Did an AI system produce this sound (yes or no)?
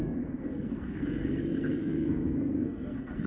yes